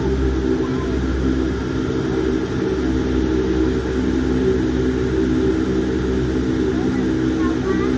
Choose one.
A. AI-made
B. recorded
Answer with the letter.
B